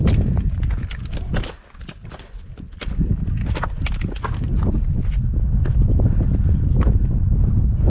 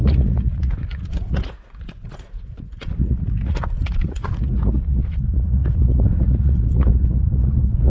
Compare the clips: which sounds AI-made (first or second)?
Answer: second